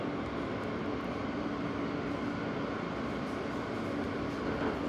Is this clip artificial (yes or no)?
no